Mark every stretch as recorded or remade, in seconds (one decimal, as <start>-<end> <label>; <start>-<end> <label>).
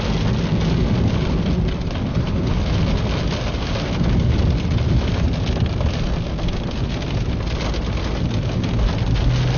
0.0-2.1 recorded; 2.1-2.6 remade; 2.6-9.6 recorded